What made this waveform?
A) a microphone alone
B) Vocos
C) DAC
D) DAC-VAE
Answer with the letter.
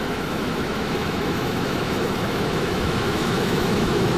D